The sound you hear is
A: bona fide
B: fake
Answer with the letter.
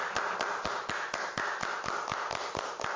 A